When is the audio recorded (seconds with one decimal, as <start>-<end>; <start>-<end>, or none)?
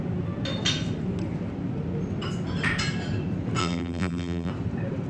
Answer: 0.0-3.6; 4.5-5.1